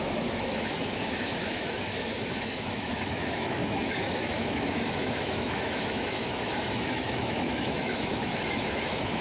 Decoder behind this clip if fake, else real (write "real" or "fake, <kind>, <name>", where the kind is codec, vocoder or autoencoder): fake, autoencoder, DAC-VAE